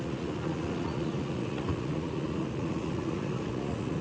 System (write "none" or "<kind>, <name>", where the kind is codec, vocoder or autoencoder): vocoder, Vocos